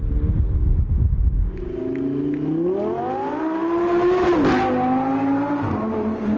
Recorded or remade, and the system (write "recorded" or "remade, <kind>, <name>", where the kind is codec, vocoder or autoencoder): recorded